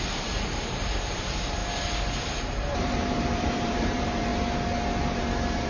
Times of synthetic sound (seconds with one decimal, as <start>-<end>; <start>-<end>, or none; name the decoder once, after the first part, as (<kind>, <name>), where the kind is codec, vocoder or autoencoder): 0.0-1.6 (vocoder, BigVGAN v2); 2.2-4.3